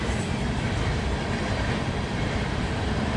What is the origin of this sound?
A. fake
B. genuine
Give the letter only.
B